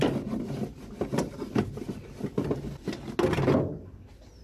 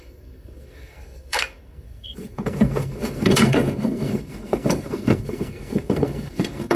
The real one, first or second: first